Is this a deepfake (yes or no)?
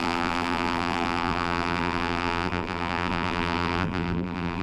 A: yes